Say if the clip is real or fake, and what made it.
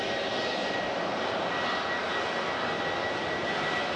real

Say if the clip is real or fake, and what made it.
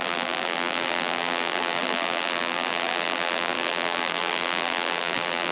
fake, vocoder, BigVGAN v2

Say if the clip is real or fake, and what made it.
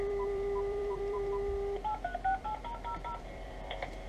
fake, vocoder, BigVGAN v2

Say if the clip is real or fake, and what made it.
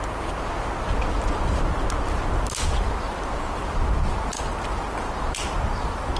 real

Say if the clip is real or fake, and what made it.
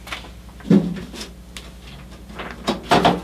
real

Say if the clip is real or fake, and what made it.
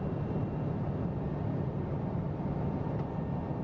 fake, vocoder, BigVGAN v2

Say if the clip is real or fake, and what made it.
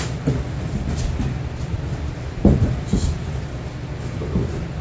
real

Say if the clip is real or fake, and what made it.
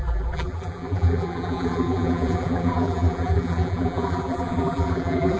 fake, vocoder, BigVGAN v2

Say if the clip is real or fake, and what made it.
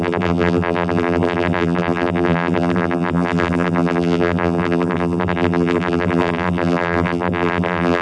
fake, vocoder, BigVGAN v2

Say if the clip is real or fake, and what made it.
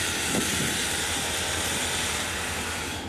fake, vocoder, BigVGAN v2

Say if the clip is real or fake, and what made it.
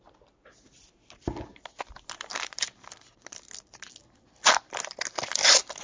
real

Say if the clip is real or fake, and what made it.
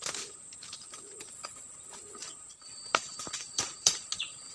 fake, vocoder, BigVGAN v2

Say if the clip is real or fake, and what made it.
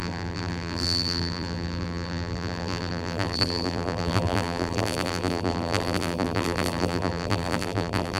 fake, vocoder, BigVGAN v2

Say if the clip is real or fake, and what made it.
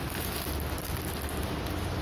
real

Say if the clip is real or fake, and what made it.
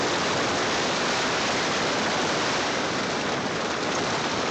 real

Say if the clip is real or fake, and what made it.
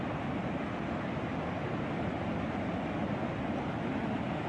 fake, vocoder, BigVGAN v2